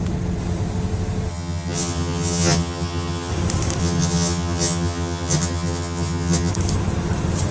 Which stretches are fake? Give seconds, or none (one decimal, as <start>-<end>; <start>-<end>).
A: 1.3-3.3; 3.8-6.5